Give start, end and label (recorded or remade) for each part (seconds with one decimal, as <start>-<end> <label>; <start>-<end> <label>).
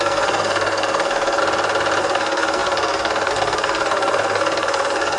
0.0-1.4 remade; 1.4-2.0 recorded; 2.0-5.2 remade